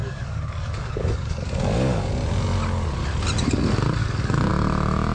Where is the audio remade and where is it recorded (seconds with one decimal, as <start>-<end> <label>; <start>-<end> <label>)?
0.0-2.1 remade; 2.1-4.0 recorded; 4.0-4.5 remade; 4.5-5.1 recorded